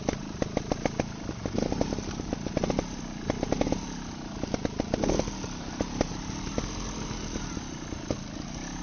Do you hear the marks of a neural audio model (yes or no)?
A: no